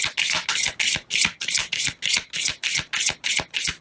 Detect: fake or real real